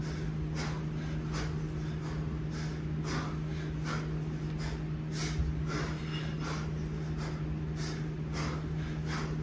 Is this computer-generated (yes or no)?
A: no